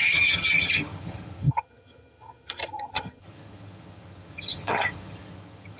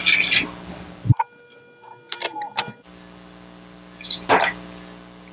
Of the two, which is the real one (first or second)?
second